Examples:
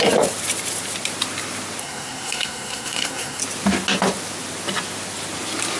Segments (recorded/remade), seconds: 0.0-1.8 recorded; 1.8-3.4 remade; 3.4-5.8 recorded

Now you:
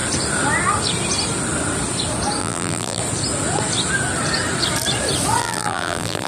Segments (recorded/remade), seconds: 0.0-2.4 recorded; 2.4-3.0 remade; 3.0-5.4 recorded; 5.4-6.3 remade

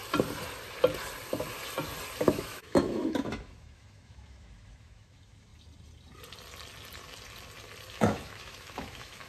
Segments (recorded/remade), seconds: 0.0-2.2 recorded; 2.2-5.5 remade; 5.5-7.9 recorded; 7.9-9.3 remade

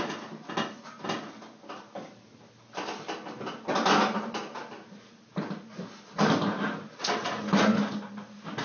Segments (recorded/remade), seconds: 0.0-8.6 recorded

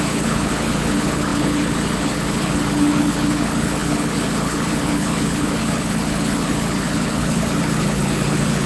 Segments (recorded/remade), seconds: 0.0-8.7 remade

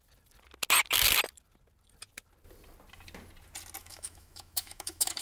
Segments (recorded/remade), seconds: 0.0-3.8 recorded; 3.8-5.2 remade

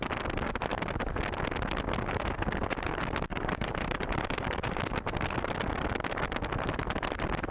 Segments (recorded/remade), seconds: 0.0-3.3 recorded; 3.3-4.8 remade; 4.8-7.5 recorded

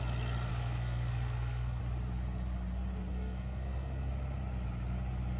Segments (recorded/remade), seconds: 0.0-0.5 recorded; 0.5-1.8 remade; 1.8-3.1 recorded; 3.1-4.1 remade; 4.1-5.4 recorded